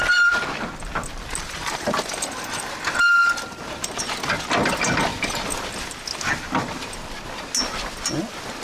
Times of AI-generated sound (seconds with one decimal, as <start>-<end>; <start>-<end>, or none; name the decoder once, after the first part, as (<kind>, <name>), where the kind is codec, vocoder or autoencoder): none